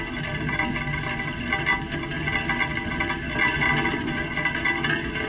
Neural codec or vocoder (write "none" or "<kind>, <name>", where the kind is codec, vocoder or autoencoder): none